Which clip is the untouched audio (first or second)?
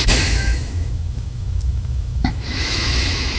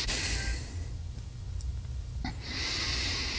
second